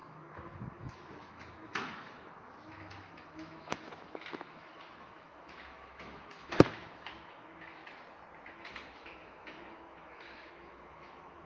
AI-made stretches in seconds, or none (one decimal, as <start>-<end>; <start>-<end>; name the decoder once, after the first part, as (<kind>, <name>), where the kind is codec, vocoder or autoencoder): 0.0-7.8 (autoencoder, DAC-VAE); 8.5-11.5